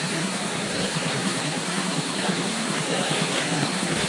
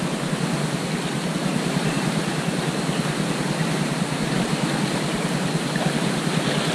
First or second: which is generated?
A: first